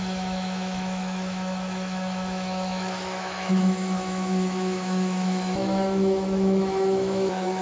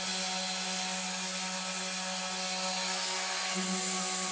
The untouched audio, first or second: second